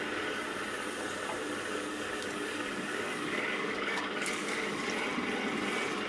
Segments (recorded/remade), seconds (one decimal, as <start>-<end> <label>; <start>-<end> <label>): 0.0-1.9 recorded; 1.9-4.8 remade; 4.8-6.1 recorded